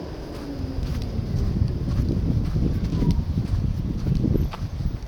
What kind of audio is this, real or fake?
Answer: real